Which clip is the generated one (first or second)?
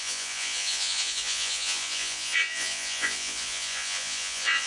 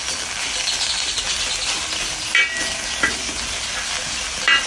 first